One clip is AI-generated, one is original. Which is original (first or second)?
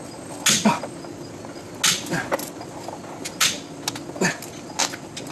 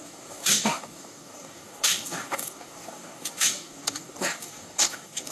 first